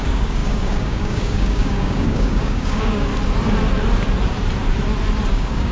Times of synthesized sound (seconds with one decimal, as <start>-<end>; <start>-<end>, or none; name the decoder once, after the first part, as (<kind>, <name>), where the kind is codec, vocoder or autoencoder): 0.0-3.1 (codec, DAC); 5.3-5.7